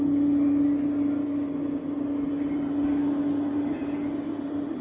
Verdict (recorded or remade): recorded